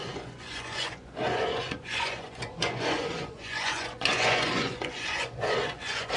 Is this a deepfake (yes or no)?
yes